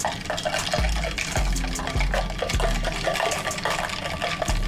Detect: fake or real real